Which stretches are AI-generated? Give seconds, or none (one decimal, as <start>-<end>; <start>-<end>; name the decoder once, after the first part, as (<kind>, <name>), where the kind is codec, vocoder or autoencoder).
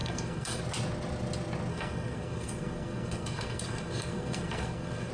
0.0-0.6 (codec, SNAC); 1.7-5.1